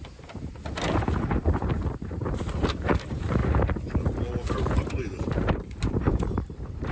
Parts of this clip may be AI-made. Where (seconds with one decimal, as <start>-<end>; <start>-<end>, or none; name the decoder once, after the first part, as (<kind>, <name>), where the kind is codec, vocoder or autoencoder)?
0.0-3.4 (vocoder, BigVGAN v2); 4.5-6.9